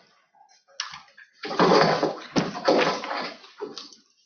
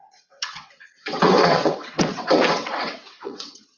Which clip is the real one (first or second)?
first